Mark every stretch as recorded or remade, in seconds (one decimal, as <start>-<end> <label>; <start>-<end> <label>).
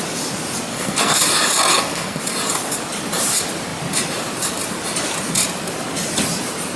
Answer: 0.0-0.7 recorded; 0.7-1.2 remade; 1.2-1.7 recorded; 1.7-2.2 remade; 2.2-6.8 recorded